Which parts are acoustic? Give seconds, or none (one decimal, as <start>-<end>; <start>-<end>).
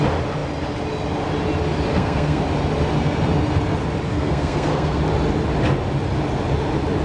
0.0-1.9; 2.4-4.1; 5.0-7.0